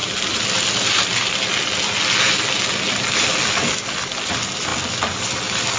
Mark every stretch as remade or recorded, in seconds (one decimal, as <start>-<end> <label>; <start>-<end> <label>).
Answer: 0.0-5.8 recorded